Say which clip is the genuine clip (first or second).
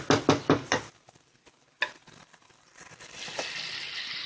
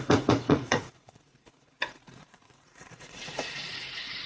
first